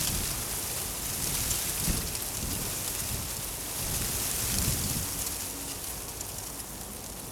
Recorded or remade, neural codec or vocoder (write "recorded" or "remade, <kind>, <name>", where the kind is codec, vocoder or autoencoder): recorded